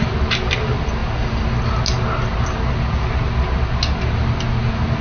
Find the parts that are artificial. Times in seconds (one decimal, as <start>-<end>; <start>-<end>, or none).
none